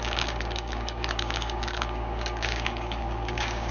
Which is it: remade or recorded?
remade